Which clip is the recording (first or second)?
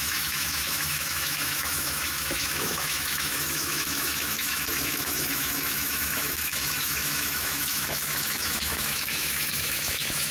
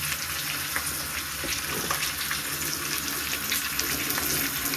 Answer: second